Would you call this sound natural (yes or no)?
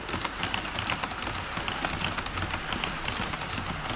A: yes